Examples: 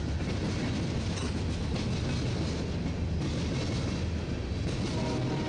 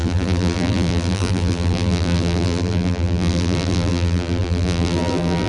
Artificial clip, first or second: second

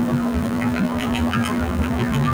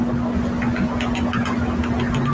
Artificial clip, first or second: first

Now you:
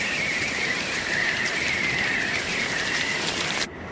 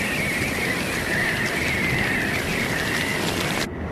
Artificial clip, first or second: first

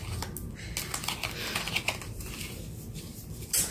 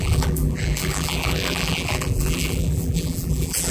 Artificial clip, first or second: second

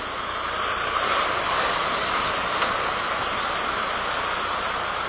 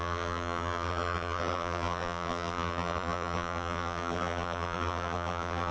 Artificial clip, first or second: second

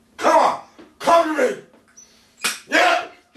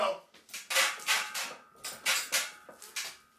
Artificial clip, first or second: first